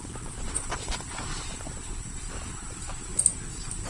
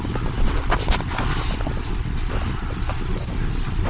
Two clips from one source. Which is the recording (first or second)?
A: second